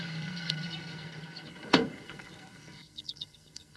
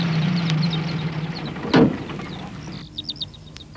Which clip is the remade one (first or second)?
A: first